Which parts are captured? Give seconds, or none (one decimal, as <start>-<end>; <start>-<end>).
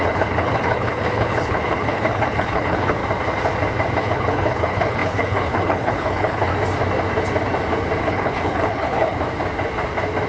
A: 3.0-4.0; 6.5-8.0; 9.1-10.3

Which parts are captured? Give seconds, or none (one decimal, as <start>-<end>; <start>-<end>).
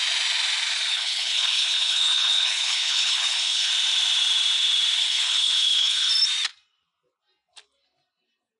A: 0.0-0.9; 3.7-5.0; 6.1-8.6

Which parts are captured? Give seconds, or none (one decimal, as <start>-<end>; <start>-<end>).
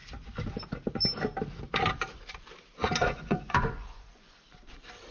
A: 0.0-3.0; 4.4-5.1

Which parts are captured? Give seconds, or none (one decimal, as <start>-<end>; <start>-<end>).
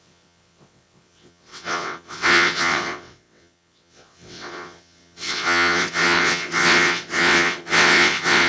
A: none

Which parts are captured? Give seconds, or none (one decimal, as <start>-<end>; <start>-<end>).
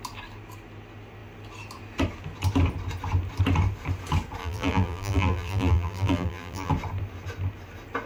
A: 0.0-4.4; 6.7-8.1